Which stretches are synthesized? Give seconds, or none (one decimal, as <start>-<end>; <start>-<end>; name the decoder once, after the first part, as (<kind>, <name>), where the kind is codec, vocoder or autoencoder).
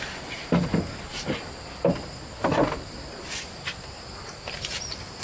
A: none